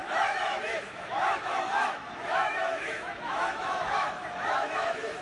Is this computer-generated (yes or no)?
yes